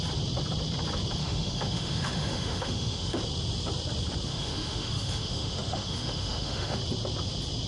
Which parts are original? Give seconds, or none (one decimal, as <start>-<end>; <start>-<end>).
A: 0.0-1.2; 3.2-4.3; 6.8-7.7